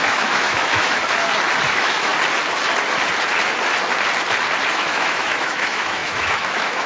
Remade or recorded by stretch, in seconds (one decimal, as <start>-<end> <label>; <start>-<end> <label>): 0.0-1.0 remade; 1.0-1.6 recorded; 1.6-2.1 remade; 2.1-4.7 recorded; 4.7-6.9 remade